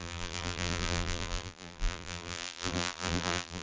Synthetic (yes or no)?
yes